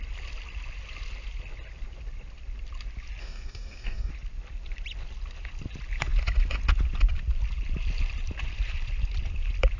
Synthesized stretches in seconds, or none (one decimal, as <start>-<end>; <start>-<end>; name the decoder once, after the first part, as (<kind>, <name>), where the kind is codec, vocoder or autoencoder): 3.2-4.1 (codec, DAC)